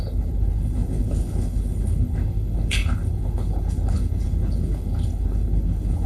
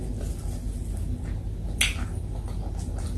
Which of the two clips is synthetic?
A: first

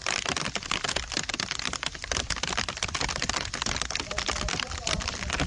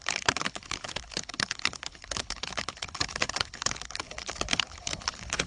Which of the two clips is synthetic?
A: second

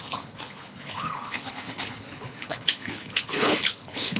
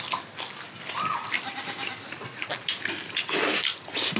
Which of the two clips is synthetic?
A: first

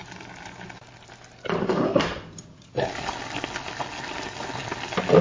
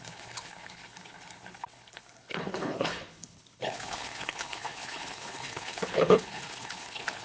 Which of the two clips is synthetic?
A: second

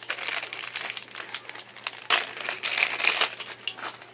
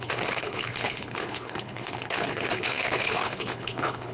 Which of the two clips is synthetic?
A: second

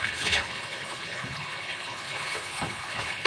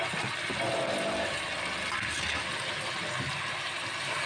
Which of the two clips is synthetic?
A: first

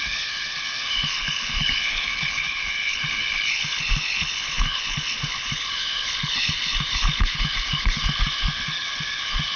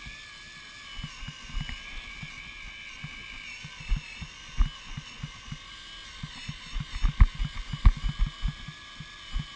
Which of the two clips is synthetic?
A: first